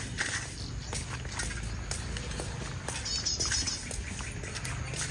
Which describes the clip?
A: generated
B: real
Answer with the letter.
B